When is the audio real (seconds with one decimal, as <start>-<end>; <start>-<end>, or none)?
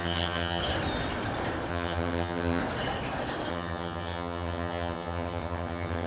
0.6-1.7; 2.6-3.5